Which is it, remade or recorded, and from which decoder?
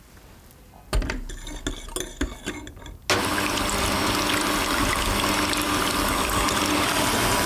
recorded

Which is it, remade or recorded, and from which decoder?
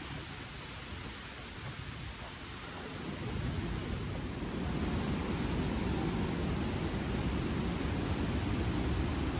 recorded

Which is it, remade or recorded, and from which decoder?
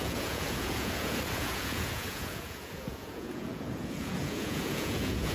remade, vocoder, Vocos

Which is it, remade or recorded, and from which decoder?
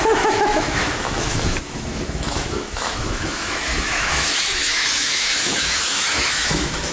remade, autoencoder, DAC-VAE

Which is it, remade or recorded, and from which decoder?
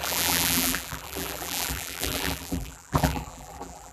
remade, vocoder, BigVGAN v2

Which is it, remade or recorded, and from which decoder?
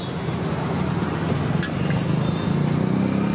recorded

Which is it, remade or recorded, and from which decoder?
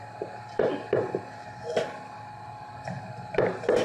recorded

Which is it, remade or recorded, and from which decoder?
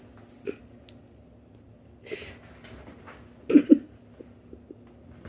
recorded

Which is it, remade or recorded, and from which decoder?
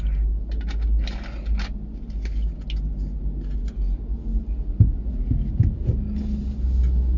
recorded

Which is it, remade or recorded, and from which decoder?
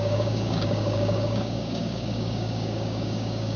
remade, codec, DAC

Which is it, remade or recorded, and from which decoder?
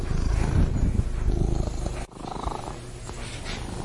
recorded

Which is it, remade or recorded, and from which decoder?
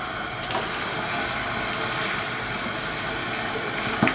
recorded